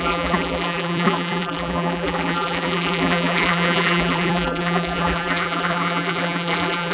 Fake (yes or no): yes